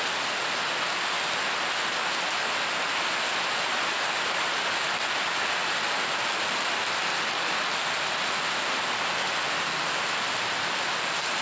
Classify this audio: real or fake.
real